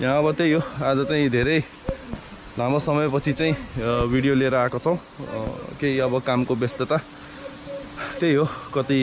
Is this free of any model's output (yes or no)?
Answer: yes